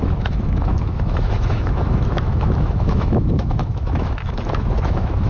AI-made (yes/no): yes